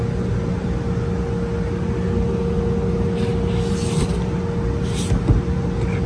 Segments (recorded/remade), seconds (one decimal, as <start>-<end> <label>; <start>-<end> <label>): 0.0-6.1 recorded